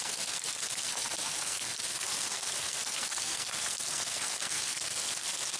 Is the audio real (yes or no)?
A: no